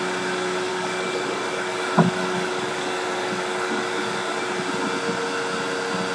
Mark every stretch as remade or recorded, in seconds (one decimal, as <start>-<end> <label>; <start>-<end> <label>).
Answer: 0.0-0.7 recorded; 0.7-4.4 remade; 4.4-6.1 recorded